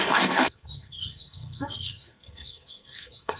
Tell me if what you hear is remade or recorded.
remade